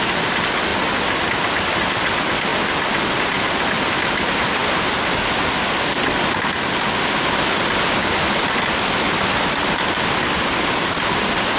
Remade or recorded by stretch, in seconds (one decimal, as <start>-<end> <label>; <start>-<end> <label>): 0.0-2.5 remade; 2.5-3.9 recorded; 3.9-4.6 remade; 4.6-8.6 recorded; 8.6-11.6 remade